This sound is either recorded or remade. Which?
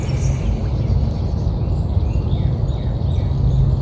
recorded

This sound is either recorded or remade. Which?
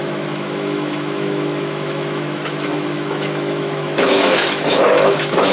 remade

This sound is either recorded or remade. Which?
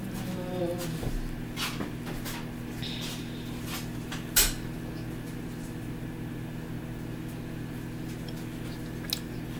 recorded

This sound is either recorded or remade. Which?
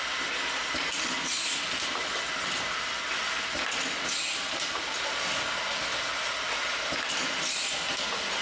recorded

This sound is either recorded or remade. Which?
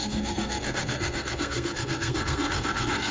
remade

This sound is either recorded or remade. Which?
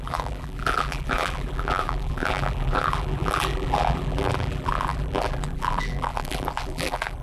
remade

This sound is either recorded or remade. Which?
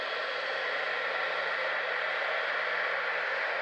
recorded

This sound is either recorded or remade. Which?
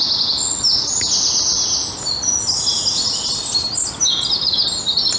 recorded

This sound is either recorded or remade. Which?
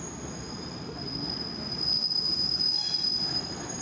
recorded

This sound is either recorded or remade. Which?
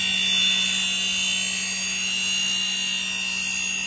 recorded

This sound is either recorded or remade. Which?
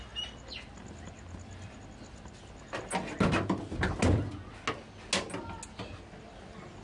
recorded